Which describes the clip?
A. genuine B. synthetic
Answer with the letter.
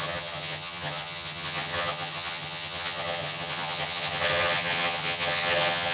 B